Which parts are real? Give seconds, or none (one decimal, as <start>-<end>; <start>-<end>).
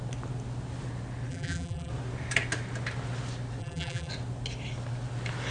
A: 0.0-1.3; 1.9-3.6; 4.1-5.5